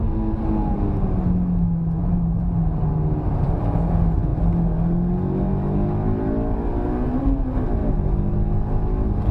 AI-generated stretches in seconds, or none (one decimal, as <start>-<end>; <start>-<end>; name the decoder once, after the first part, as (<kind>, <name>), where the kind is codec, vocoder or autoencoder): none